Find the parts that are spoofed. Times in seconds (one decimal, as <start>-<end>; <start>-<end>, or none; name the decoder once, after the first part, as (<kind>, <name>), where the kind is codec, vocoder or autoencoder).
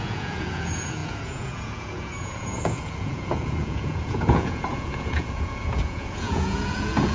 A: 0.0-7.1 (vocoder, Vocos)